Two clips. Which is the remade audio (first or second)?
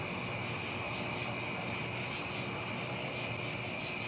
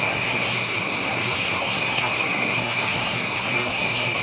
second